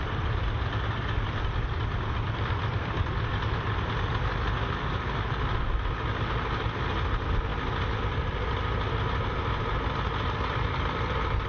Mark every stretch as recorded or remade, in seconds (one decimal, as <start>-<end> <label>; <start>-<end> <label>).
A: 0.0-11.5 recorded